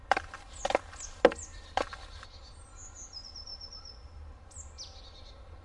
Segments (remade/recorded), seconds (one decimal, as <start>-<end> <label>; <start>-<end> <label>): 0.0-5.6 recorded